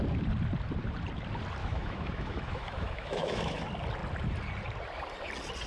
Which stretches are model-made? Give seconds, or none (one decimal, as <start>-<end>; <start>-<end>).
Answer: 1.6-3.6